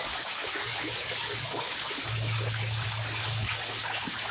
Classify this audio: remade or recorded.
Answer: remade